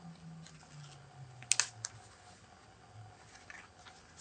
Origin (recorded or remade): recorded